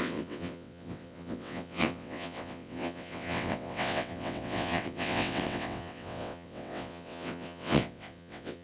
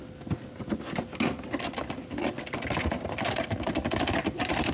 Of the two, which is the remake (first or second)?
first